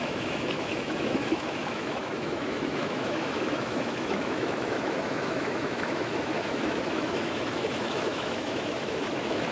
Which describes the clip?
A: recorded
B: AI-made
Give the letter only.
B